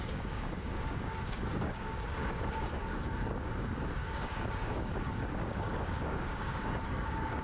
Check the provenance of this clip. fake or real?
fake